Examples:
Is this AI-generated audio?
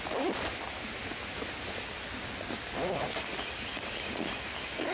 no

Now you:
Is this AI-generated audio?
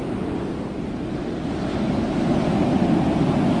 no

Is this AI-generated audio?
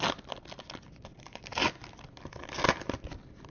no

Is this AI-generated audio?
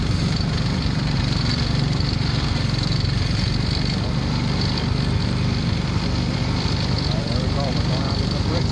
yes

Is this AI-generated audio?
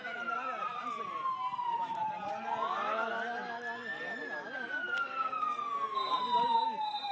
no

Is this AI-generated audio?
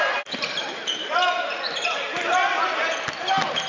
no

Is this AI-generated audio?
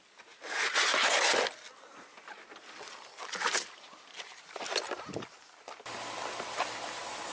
no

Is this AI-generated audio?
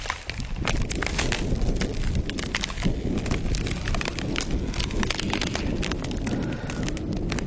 no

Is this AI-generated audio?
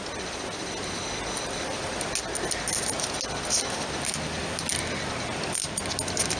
no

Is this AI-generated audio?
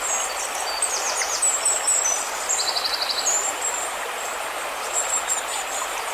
no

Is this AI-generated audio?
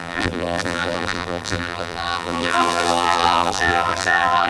yes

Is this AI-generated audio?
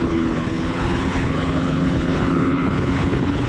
yes